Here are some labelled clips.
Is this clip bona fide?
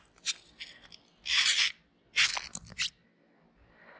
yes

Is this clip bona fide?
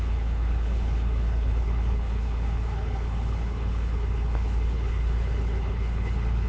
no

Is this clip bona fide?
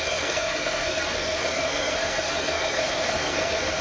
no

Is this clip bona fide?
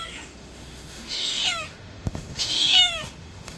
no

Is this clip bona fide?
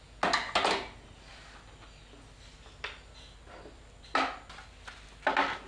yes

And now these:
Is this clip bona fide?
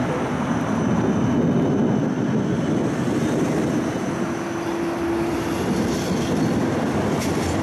yes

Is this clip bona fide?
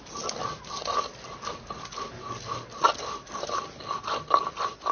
yes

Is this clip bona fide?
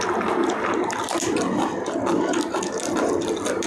yes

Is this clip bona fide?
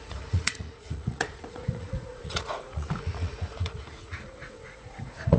no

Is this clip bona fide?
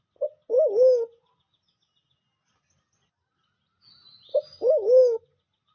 yes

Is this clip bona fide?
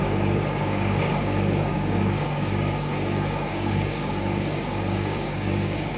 no